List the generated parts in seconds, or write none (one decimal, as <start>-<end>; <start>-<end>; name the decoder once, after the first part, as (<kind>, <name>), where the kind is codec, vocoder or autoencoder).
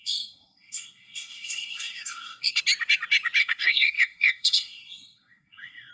0.0-2.6 (codec, SNAC); 3.4-5.9